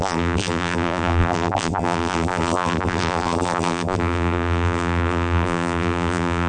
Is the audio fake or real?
fake